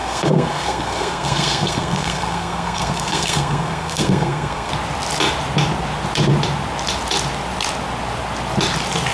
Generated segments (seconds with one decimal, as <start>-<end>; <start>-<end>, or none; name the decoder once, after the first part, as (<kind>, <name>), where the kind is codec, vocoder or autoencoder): 0.0-4.7 (codec, SNAC)